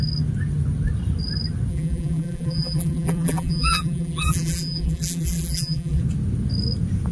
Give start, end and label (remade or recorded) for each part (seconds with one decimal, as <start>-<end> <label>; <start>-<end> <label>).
0.0-1.7 recorded; 1.7-6.0 remade; 6.0-7.1 recorded